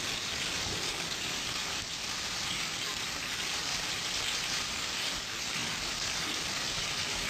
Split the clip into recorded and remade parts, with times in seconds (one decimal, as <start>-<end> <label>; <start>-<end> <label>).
0.0-1.9 remade; 1.9-2.5 recorded; 2.5-3.7 remade; 3.7-4.7 recorded; 4.7-7.3 remade